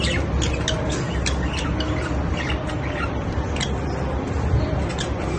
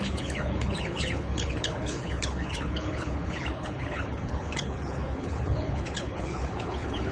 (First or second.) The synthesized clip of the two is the second